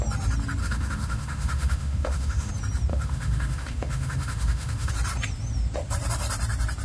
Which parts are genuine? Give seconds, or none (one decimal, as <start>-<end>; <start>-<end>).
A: 0.0-0.6; 2.5-2.9; 4.9-6.8